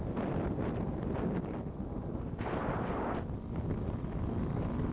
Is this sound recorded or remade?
recorded